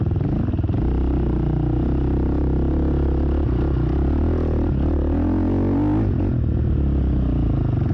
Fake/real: real